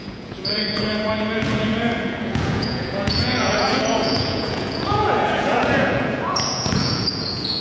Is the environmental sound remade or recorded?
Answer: remade